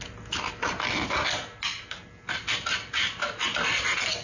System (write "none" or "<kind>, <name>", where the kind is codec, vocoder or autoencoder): none